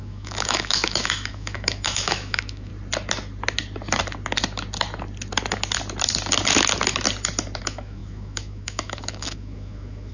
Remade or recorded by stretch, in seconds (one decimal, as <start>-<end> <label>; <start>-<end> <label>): 0.0-2.7 remade; 2.7-7.6 recorded; 7.6-10.1 remade